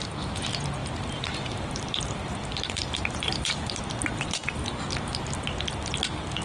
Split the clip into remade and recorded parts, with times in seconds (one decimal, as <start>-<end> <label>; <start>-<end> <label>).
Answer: 0.0-0.8 recorded; 0.8-4.6 remade; 4.6-6.4 recorded